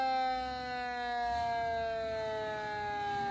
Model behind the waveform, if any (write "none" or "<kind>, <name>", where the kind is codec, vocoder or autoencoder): none